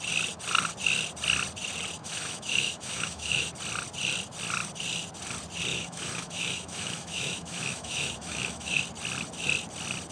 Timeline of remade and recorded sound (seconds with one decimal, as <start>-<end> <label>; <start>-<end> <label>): 0.0-2.0 recorded; 2.0-3.5 remade; 3.5-5.7 recorded; 5.7-8.8 remade; 8.8-10.1 recorded